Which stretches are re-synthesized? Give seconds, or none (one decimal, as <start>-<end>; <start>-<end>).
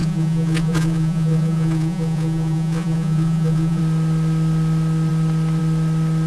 0.0-3.8